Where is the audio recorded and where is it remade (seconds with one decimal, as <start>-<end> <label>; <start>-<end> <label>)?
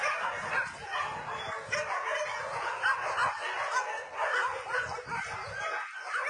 0.0-6.3 recorded